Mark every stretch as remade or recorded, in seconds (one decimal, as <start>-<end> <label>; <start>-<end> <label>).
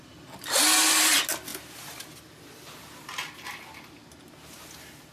0.0-5.1 recorded